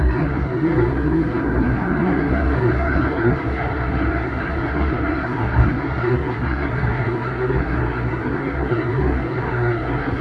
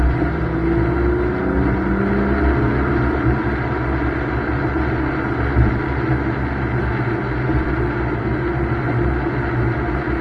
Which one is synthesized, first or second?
first